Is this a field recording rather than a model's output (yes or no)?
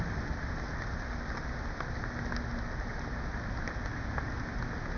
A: yes